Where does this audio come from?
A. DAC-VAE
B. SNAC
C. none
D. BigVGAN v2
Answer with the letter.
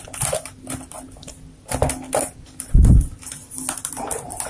C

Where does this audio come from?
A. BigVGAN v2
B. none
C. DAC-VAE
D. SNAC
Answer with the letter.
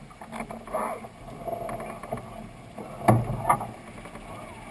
B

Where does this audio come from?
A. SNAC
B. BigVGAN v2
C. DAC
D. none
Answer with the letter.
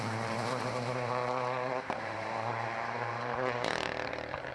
B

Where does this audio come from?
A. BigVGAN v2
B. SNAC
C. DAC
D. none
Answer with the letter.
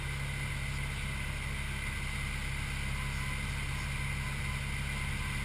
D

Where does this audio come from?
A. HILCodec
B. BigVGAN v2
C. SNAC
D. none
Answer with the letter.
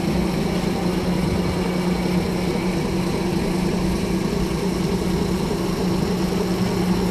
D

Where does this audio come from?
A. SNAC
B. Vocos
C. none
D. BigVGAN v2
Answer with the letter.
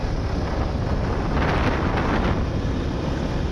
C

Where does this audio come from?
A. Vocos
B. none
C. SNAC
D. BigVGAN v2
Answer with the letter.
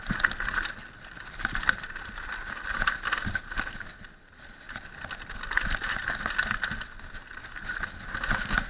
B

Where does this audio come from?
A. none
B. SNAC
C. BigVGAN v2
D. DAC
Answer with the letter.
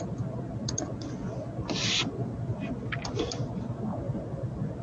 C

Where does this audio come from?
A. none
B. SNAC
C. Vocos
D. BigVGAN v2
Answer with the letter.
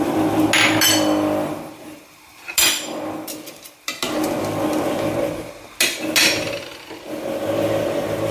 A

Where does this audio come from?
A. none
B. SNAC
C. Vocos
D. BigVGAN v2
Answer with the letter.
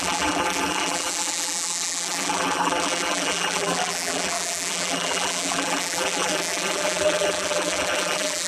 D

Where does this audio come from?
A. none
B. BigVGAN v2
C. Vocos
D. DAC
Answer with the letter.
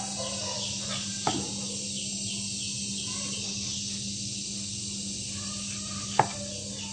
A